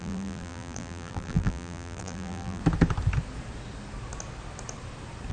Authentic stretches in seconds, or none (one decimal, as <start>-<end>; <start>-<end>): 2.6-5.3